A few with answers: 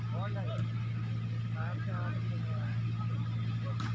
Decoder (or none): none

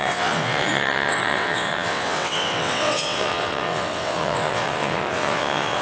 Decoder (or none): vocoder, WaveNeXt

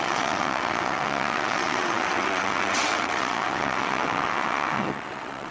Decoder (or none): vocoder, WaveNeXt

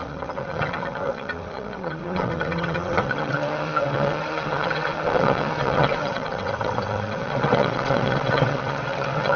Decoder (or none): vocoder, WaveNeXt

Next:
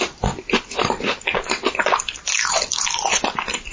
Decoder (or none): none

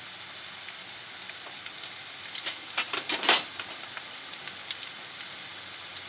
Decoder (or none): none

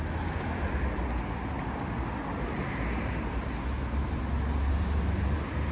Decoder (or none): none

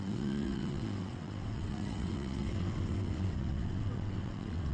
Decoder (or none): vocoder, WaveNeXt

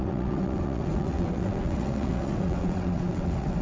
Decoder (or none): vocoder, WaveNeXt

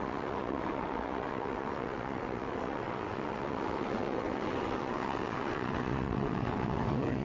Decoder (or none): vocoder, WaveNeXt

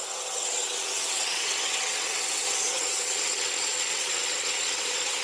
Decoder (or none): vocoder, WaveNeXt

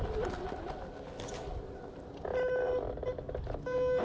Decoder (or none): none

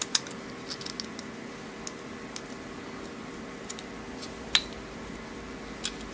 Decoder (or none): none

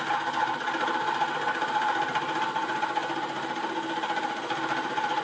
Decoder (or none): none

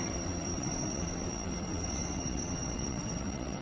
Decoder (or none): vocoder, WaveNeXt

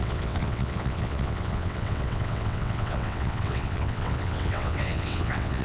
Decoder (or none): vocoder, WaveNeXt